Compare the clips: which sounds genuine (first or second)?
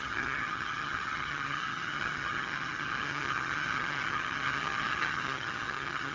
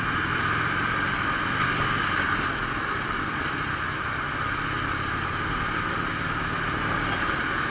second